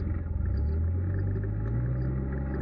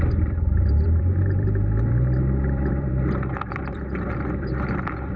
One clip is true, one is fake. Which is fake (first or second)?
second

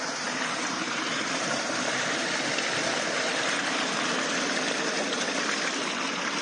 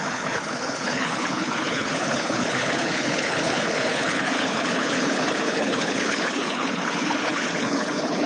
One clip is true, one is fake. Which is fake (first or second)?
second